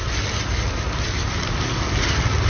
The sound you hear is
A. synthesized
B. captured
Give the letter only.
B